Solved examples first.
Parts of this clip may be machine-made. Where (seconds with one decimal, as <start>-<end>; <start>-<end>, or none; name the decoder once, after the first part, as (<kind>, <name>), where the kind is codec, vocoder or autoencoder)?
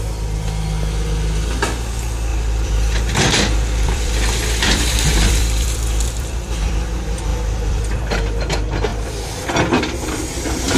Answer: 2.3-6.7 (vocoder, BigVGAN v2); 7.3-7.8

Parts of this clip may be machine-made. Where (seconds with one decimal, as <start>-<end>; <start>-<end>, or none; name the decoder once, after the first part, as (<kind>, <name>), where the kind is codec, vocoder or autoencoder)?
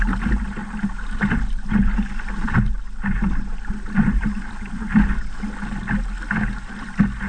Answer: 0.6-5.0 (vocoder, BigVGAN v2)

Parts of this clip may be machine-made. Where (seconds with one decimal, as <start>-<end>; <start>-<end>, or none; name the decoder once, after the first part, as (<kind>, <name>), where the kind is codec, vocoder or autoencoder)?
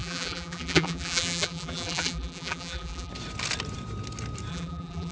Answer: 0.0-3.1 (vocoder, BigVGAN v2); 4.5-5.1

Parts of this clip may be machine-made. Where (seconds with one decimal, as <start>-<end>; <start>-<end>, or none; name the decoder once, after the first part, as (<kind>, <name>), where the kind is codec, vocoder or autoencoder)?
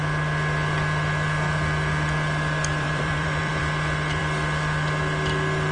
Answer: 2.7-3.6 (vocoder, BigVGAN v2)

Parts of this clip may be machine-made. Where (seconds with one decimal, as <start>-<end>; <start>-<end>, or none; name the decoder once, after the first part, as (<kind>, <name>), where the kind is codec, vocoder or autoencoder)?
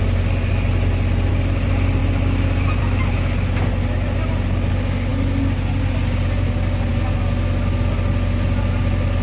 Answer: none